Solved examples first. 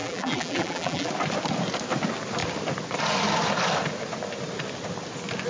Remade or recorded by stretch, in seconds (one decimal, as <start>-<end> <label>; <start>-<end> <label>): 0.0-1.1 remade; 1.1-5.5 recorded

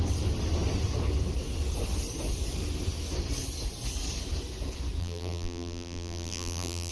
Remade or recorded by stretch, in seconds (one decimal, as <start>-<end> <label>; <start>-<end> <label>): 0.0-5.0 recorded; 5.0-6.9 remade

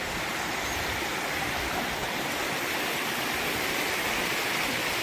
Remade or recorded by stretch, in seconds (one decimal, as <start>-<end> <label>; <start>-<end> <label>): 0.0-1.6 remade; 1.6-5.0 recorded